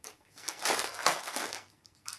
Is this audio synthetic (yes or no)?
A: yes